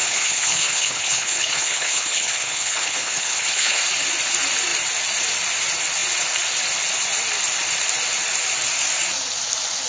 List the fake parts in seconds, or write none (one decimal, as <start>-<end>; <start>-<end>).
0.0-3.8